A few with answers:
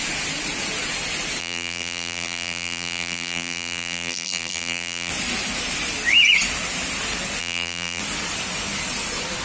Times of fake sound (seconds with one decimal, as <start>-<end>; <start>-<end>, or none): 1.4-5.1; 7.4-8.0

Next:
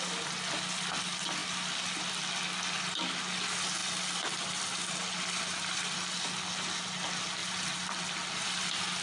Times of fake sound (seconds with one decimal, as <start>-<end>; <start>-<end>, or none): 7.4-8.1

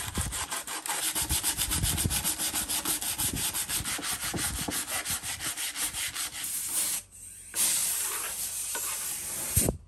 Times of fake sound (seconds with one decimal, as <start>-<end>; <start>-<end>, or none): 0.0-1.7; 5.3-9.9

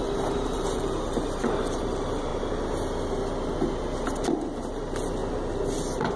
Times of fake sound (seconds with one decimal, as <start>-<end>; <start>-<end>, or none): 0.0-2.3; 4.7-5.2